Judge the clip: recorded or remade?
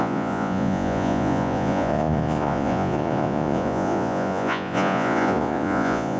remade